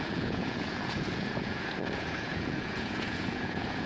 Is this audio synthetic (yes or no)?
yes